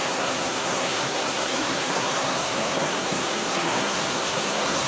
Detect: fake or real fake